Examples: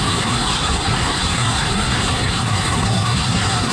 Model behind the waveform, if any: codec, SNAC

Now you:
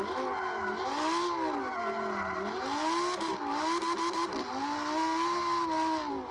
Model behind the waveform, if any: none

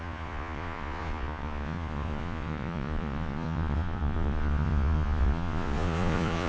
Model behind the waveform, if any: vocoder, Vocos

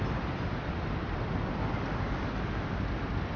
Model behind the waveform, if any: vocoder, BigVGAN v2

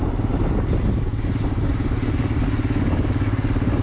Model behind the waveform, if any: none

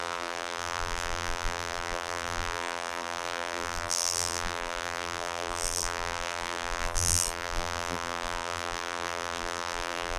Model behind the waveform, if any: vocoder, BigVGAN v2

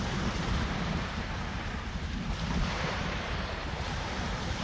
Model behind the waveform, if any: vocoder, BigVGAN v2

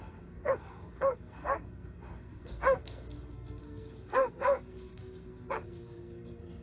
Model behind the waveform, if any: codec, SNAC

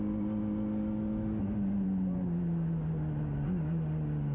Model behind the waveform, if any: none